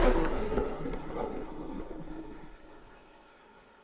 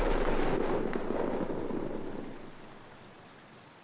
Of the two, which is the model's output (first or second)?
first